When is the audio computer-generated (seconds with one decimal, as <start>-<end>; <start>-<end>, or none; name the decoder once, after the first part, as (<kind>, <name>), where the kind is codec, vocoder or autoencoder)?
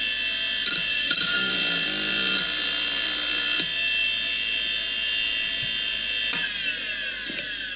0.9-1.5 (codec, DAC)